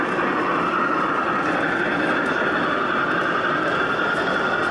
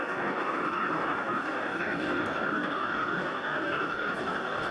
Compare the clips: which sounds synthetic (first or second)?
second